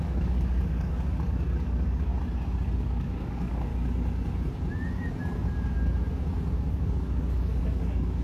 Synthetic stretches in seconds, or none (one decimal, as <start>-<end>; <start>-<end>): 0.0-2.1; 2.8-3.7; 6.7-8.2